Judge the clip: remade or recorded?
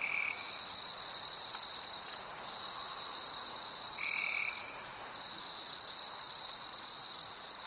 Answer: remade